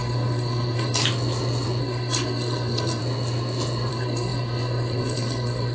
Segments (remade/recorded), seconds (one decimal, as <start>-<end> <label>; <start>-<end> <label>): 0.0-1.0 remade; 1.0-1.8 recorded; 1.8-3.0 remade; 3.0-3.9 recorded; 3.9-5.7 remade